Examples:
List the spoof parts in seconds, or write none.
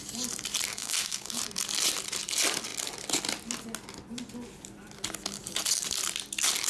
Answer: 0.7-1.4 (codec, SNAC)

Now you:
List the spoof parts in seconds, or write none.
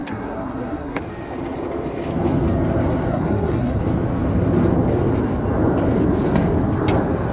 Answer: 0.0-1.0 (codec, SNAC); 3.1-3.8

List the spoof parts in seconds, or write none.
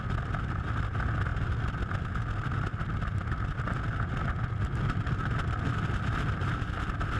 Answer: none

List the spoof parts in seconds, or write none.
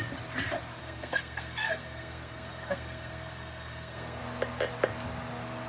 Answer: 0.8-4.2 (codec, SNAC)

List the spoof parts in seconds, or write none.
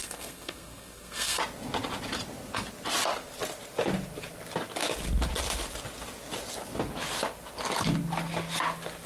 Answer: 0.0-1.4 (codec, SNAC)